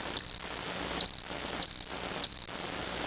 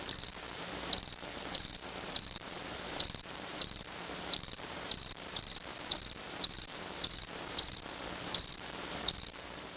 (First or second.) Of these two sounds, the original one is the first